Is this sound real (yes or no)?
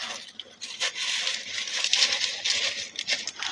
yes